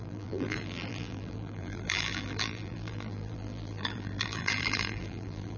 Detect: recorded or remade remade